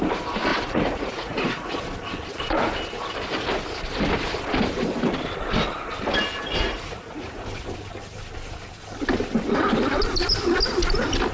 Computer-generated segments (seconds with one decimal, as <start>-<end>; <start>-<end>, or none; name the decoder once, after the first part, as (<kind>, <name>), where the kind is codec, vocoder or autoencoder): 0.5-1.7 (vocoder, Vocos); 6.4-7.4